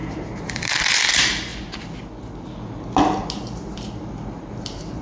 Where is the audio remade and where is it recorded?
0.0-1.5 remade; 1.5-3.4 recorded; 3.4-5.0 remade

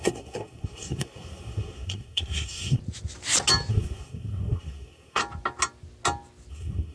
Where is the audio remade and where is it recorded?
0.0-2.8 remade; 2.8-3.7 recorded; 3.7-5.2 remade; 5.2-6.5 recorded; 6.5-6.9 remade

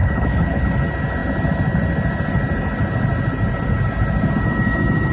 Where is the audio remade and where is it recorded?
0.0-0.6 remade; 0.6-5.1 recorded

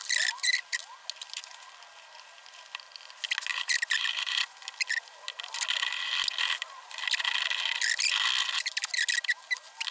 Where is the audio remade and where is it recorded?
0.0-3.5 recorded; 3.5-4.4 remade; 4.4-9.9 recorded